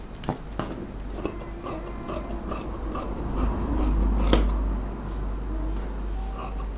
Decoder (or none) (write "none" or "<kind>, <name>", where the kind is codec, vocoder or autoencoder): none